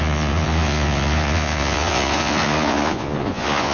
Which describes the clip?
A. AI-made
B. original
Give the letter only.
A